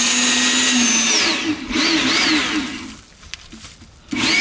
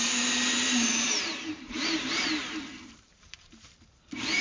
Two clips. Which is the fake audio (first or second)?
second